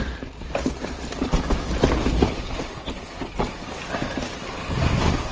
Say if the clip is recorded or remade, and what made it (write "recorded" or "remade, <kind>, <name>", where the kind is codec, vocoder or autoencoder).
recorded